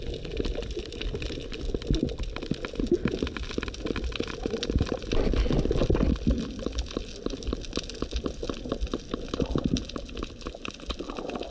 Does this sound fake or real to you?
real